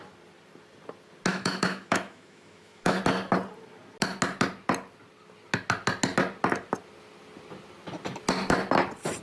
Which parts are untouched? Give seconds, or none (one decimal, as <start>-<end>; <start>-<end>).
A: 0.0-1.3; 3.0-9.2